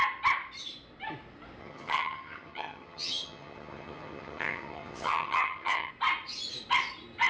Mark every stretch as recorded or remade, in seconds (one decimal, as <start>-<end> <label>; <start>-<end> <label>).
0.0-1.6 recorded; 1.6-5.9 remade; 5.9-7.3 recorded